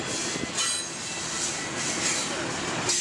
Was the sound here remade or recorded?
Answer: recorded